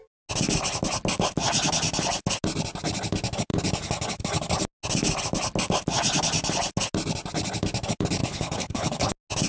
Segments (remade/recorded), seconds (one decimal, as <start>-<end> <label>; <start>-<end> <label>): 0.0-8.2 recorded; 8.2-9.1 remade; 9.1-9.5 recorded